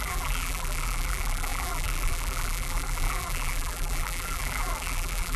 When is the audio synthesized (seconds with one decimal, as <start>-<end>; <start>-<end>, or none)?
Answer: 0.0-5.4